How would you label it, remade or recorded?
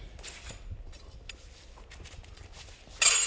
recorded